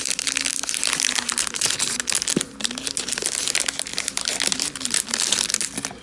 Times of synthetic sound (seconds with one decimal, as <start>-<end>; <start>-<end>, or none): none